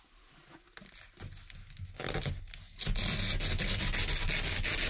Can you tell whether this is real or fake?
real